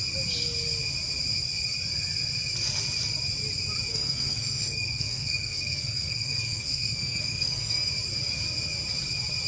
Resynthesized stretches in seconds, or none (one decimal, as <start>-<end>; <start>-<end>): 3.9-7.9